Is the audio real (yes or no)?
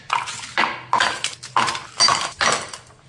yes